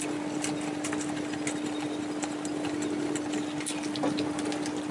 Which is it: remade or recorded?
recorded